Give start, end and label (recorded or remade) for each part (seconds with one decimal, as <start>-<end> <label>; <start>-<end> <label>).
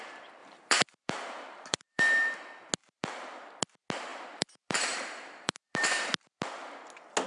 0.0-0.4 recorded; 0.4-2.0 remade; 2.0-2.8 recorded; 2.8-3.5 remade; 3.5-4.1 recorded; 4.1-5.9 remade; 5.9-7.3 recorded